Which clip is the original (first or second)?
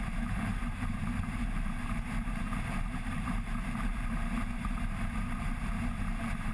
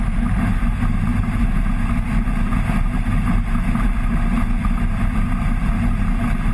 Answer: second